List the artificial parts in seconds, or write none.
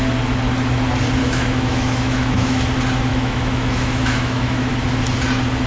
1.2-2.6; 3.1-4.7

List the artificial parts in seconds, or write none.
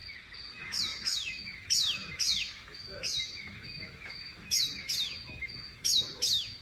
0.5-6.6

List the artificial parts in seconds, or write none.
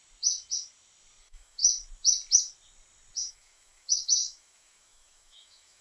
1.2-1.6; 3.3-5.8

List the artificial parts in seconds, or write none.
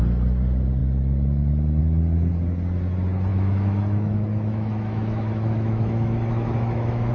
3.3-7.1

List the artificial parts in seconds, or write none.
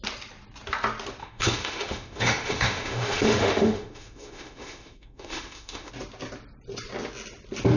1.2-5.9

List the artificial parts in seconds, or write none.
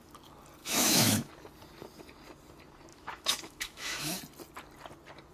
0.6-1.3; 2.9-4.2